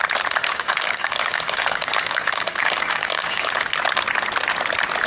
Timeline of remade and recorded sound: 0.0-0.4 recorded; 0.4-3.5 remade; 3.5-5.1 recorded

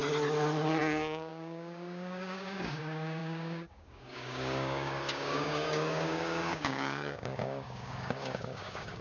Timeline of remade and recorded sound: 0.0-0.8 recorded; 0.8-9.0 remade

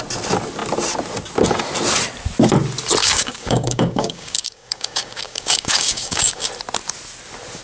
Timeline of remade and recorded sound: 0.0-3.0 recorded; 3.0-6.5 remade; 6.5-7.6 recorded

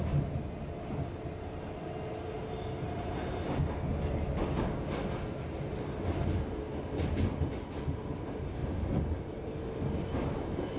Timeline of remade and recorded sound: 0.0-4.4 recorded; 4.4-5.0 remade; 5.0-10.8 recorded